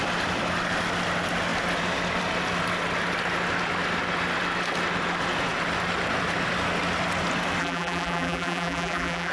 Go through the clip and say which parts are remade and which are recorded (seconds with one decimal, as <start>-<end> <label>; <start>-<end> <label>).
0.0-7.6 recorded; 7.6-9.3 remade